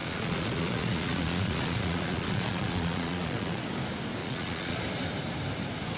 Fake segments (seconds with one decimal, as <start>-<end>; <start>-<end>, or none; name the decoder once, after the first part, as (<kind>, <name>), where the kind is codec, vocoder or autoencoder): 0.0-3.6 (vocoder, Vocos); 4.2-4.8